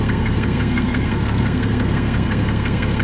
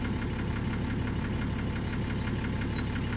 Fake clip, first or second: first